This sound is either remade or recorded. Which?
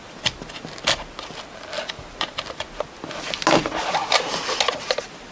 recorded